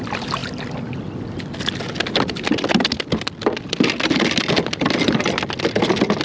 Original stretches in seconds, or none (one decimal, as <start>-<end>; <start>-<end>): 0.0-6.2